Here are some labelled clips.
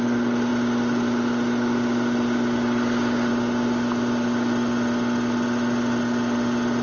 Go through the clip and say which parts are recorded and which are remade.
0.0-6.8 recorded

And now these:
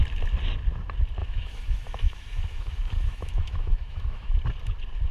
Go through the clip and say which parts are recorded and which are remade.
0.0-1.2 recorded; 1.2-4.3 remade; 4.3-5.1 recorded

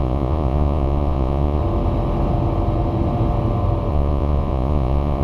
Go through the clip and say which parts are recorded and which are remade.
0.0-1.6 remade; 1.6-3.9 recorded; 3.9-5.2 remade

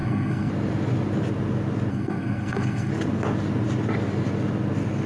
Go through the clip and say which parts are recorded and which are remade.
0.0-0.5 remade; 0.5-1.9 recorded; 1.9-2.9 remade; 2.9-5.1 recorded

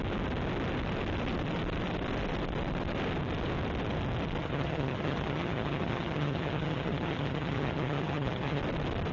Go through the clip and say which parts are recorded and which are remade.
0.0-4.4 recorded; 4.4-8.6 remade; 8.6-9.1 recorded

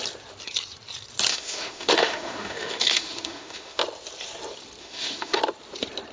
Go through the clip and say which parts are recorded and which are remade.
0.0-1.3 recorded; 1.3-3.8 remade; 3.8-4.8 recorded; 4.8-5.4 remade; 5.4-6.1 recorded

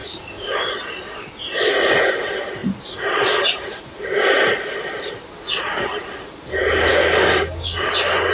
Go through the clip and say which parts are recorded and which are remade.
0.0-0.7 remade; 0.7-6.9 recorded; 6.9-7.9 remade; 7.9-8.3 recorded